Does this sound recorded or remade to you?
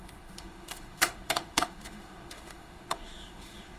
remade